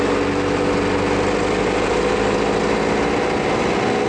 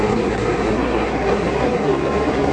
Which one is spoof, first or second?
second